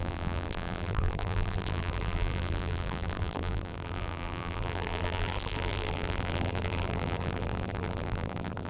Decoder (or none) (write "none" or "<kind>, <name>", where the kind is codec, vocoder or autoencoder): vocoder, BigVGAN v2